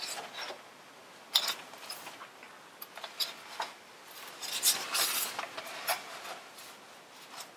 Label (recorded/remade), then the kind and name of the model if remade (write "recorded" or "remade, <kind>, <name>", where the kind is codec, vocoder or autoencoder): recorded